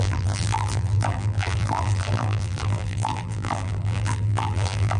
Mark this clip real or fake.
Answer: fake